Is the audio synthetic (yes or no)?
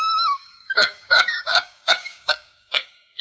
yes